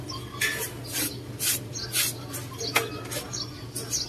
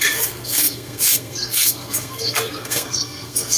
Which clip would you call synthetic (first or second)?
second